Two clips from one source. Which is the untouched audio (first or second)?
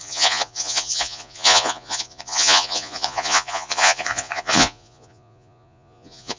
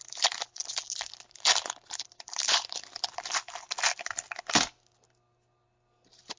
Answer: second